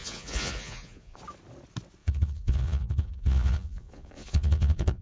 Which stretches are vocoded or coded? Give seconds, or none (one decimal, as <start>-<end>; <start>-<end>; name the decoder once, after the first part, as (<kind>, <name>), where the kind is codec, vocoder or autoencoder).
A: 0.0-1.2 (vocoder, Vocos); 2.0-5.0